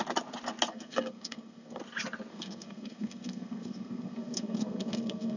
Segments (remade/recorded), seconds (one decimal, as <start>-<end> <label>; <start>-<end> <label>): 0.0-0.7 recorded; 0.7-1.8 remade; 1.8-2.3 recorded; 2.3-5.4 remade

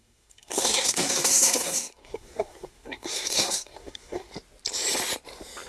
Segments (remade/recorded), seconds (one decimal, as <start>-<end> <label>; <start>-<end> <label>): 0.0-4.3 remade; 4.3-5.7 recorded

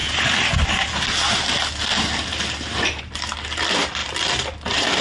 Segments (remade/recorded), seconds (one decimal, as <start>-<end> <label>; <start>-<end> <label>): 0.0-5.0 recorded